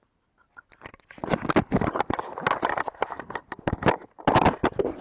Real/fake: real